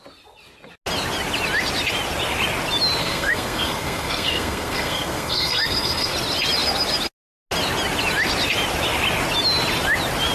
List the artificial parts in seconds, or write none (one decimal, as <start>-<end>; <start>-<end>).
3.0-6.1